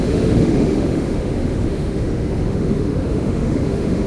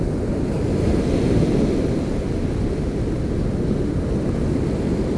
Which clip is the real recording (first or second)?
second